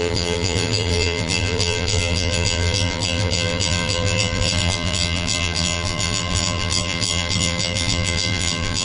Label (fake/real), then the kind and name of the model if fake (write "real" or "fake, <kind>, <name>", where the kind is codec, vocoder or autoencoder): fake, vocoder, BigVGAN v2